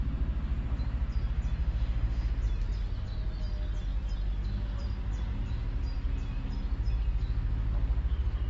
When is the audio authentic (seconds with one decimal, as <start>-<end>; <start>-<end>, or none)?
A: 0.0-1.6; 2.3-8.5